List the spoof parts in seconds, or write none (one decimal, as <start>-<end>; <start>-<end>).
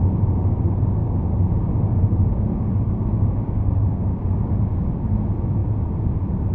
1.0-4.9